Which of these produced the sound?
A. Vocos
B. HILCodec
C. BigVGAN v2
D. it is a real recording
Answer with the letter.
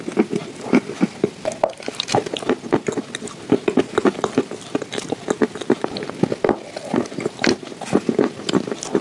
D